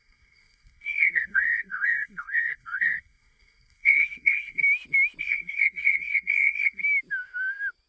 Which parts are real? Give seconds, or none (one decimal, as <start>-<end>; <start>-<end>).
4.6-5.2; 6.8-7.9